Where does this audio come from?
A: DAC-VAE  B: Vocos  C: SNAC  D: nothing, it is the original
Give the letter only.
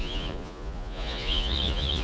B